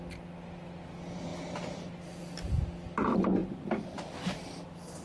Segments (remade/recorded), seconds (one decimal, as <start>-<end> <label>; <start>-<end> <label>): 0.0-5.0 recorded